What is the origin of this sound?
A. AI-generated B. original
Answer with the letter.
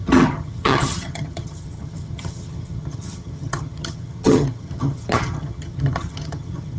A